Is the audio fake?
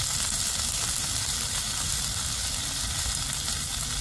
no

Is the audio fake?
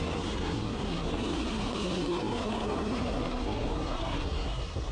yes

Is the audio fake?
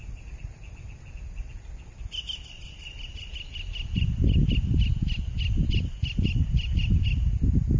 no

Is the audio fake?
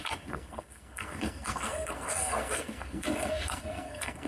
yes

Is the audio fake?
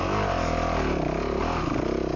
no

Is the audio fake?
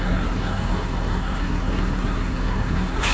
yes